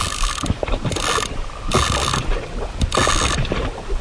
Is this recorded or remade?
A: recorded